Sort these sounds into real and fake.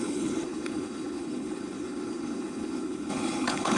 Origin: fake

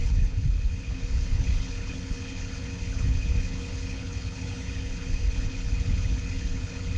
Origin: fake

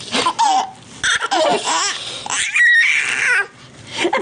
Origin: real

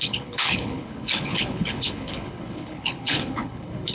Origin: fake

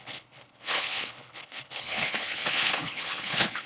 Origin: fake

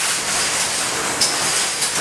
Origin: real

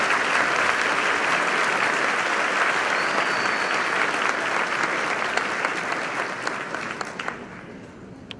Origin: real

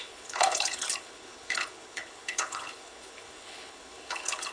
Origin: fake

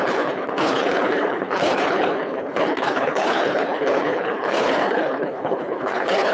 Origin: fake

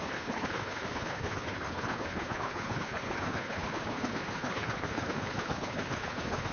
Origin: fake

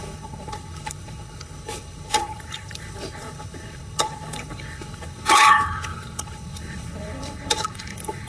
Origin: fake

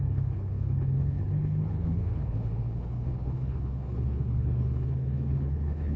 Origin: fake